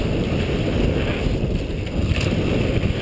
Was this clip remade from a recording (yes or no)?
no